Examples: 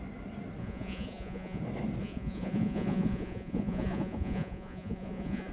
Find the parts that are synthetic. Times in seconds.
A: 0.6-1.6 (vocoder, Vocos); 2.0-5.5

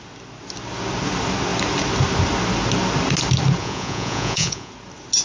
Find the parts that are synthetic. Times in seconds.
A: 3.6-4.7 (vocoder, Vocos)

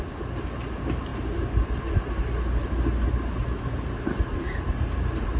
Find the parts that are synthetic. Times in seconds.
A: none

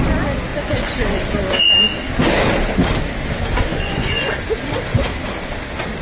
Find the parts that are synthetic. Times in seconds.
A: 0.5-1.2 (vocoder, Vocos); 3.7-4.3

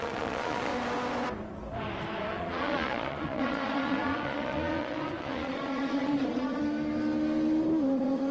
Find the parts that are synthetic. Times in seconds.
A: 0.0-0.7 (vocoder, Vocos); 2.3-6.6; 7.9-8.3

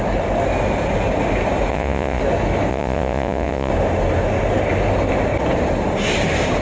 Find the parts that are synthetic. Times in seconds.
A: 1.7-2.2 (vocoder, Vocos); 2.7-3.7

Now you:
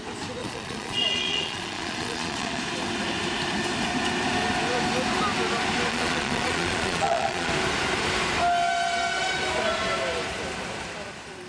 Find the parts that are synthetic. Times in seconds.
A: 0.4-2.6 (vocoder, Vocos); 5.9-7.5

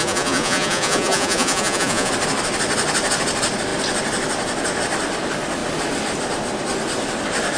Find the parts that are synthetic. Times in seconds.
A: 0.0-2.1 (vocoder, Vocos)